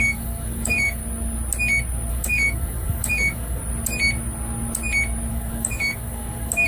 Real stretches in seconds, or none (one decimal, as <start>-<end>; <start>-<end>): 1.0-2.1; 3.6-5.3